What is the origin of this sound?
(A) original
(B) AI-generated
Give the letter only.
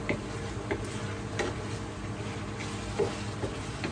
A